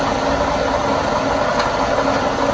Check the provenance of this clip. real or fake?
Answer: real